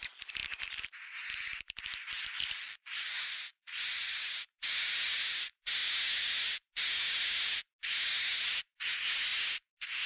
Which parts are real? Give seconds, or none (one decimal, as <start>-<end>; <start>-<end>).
0.0-10.1